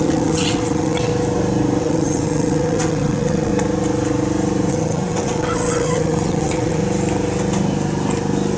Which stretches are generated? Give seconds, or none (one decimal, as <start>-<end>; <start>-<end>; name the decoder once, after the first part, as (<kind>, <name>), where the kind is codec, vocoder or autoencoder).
0.0-1.1 (vocoder, WaveNeXt); 1.8-3.5; 4.7-6.8